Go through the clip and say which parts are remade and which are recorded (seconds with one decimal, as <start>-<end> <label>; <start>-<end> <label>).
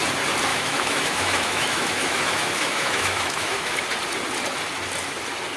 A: 0.0-0.5 recorded; 0.5-3.8 remade; 3.8-5.6 recorded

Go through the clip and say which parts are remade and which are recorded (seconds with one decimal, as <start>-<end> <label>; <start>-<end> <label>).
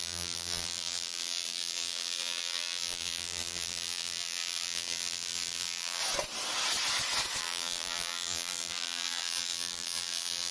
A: 0.0-6.0 remade; 6.0-7.4 recorded; 7.4-10.5 remade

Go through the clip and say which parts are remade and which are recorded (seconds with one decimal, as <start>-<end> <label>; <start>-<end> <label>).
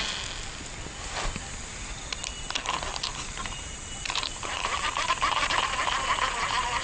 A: 0.0-2.9 recorded; 2.9-5.5 remade; 5.5-6.8 recorded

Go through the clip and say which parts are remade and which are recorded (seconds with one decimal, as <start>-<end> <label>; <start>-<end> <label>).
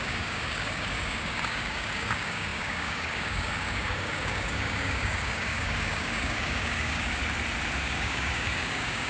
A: 0.0-7.2 remade; 7.2-7.8 recorded; 7.8-9.1 remade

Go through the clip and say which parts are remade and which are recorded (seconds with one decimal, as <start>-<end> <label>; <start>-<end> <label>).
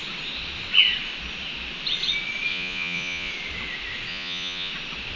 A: 0.0-2.5 recorded; 2.5-3.3 remade; 3.3-4.1 recorded; 4.1-4.7 remade; 4.7-5.2 recorded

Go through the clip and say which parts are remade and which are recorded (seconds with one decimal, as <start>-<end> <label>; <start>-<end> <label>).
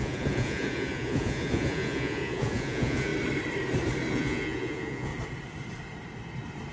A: 0.0-3.1 remade; 3.1-4.1 recorded; 4.1-5.1 remade; 5.1-6.7 recorded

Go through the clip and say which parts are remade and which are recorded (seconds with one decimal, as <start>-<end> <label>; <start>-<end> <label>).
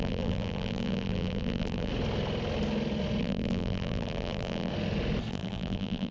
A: 0.0-1.9 remade; 1.9-3.2 recorded; 3.2-4.7 remade; 4.7-5.3 recorded; 5.3-6.1 remade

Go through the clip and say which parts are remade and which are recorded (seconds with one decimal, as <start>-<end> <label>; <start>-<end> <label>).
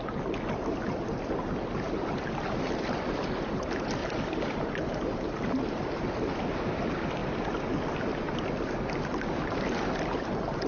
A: 0.0-4.0 recorded; 4.0-5.8 remade; 5.8-10.7 recorded